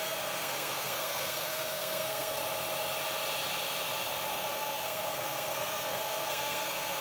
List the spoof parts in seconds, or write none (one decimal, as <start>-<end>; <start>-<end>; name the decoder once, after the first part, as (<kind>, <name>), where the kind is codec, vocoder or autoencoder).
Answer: 0.0-2.4 (codec, SNAC); 4.3-7.0